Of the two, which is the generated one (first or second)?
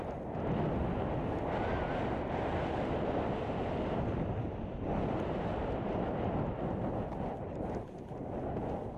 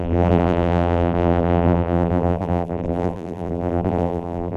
second